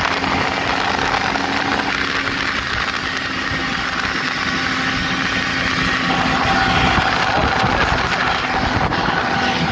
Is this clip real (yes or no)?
yes